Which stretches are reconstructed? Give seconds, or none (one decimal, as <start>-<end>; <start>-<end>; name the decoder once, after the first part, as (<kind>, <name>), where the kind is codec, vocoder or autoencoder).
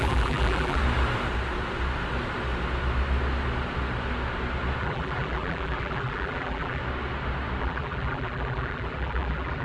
0.0-0.8 (vocoder, BigVGAN v2); 4.8-6.8; 7.6-9.6